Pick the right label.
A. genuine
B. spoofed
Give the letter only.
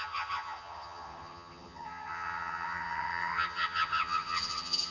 B